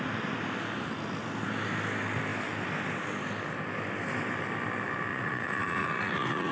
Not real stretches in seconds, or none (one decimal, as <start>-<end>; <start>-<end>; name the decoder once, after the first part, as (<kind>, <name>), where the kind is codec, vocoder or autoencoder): 5.1-6.5 (vocoder, Vocos)